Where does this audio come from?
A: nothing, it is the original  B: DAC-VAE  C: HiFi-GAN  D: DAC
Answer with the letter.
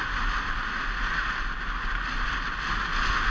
A